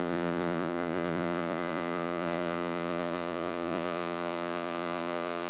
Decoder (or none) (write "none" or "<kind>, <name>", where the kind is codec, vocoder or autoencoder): vocoder, Vocos